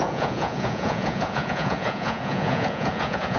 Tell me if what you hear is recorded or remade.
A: remade